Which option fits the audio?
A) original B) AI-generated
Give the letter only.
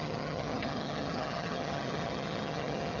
B